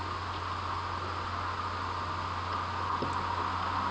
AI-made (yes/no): no